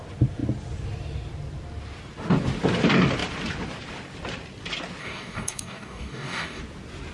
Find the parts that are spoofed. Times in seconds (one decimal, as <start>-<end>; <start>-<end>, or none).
5.0-6.6